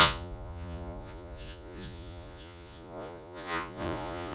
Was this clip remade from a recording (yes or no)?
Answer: yes